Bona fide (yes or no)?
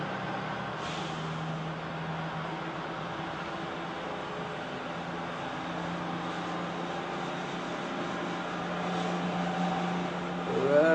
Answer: yes